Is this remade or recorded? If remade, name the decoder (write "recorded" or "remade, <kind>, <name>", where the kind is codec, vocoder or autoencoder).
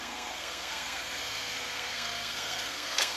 remade, codec, SNAC